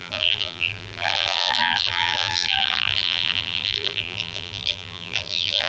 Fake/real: fake